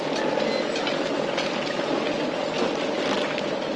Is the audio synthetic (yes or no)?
no